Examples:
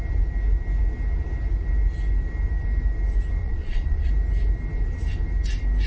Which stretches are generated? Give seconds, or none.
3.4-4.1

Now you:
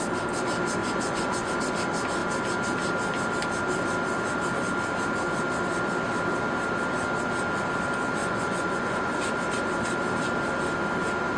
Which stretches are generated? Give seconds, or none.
0.8-1.6; 8.2-9.2

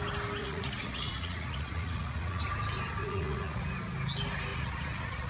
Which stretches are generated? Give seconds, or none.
0.4-2.4; 3.0-3.6; 4.5-5.3

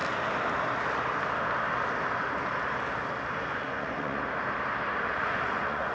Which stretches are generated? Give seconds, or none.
3.5-4.2; 5.2-5.9

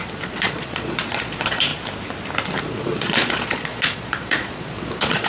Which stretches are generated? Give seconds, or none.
0.0-1.7; 2.6-5.3

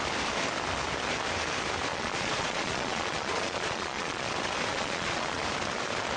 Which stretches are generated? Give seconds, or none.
1.9-4.3; 4.7-5.4

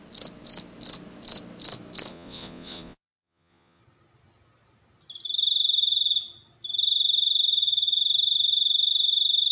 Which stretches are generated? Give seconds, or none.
2.1-3.8